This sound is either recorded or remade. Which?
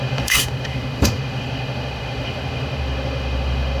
remade